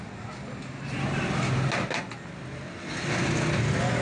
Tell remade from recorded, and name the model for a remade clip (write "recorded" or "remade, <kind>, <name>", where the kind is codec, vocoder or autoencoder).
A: recorded